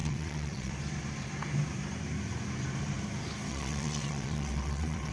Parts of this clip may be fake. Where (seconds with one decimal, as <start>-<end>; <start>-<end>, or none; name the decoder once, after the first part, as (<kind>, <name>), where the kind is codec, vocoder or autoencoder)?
0.0-0.7 (vocoder, WaveNeXt); 3.5-5.1